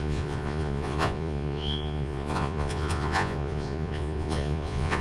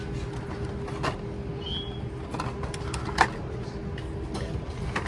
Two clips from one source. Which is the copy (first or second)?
first